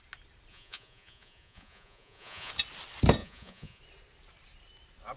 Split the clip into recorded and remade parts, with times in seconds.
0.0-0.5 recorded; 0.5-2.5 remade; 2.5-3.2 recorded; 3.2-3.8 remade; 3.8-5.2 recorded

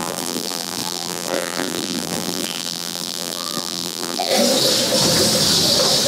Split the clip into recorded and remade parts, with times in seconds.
0.0-4.3 remade; 4.3-6.1 recorded

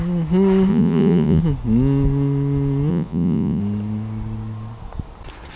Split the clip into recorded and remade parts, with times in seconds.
0.0-0.7 recorded; 0.7-1.4 remade; 1.4-2.9 recorded; 2.9-3.6 remade; 3.6-5.6 recorded

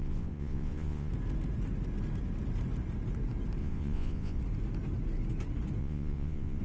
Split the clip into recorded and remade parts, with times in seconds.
0.0-1.1 remade; 1.1-3.6 recorded; 3.6-4.4 remade; 4.4-5.8 recorded; 5.8-6.6 remade

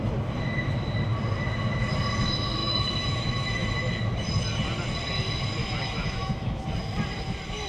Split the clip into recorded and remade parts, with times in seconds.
0.0-2.6 recorded; 2.6-3.9 remade; 3.9-5.6 recorded; 5.6-6.6 remade; 6.6-7.7 recorded

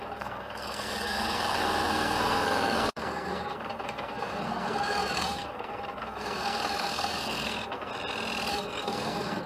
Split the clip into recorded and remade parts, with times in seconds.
0.0-7.9 remade; 7.9-8.5 recorded; 8.5-9.5 remade

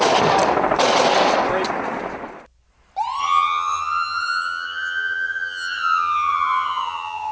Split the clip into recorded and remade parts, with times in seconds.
0.0-3.2 recorded; 3.2-7.3 remade

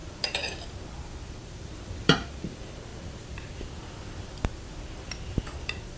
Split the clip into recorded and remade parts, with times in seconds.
0.0-6.0 remade